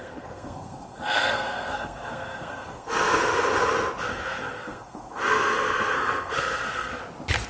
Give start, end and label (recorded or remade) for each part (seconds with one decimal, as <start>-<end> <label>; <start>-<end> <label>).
0.0-3.2 remade; 3.2-4.1 recorded; 4.1-6.9 remade; 6.9-7.5 recorded